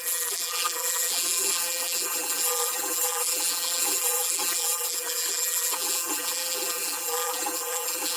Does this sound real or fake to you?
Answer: fake